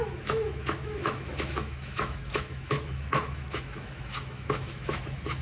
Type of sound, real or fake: fake